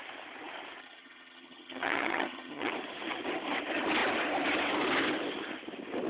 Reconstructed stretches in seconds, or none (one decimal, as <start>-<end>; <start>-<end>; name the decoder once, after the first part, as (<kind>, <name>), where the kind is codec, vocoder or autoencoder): 0.8-2.7 (vocoder, HiFi-GAN)